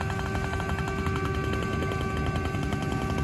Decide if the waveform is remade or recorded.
recorded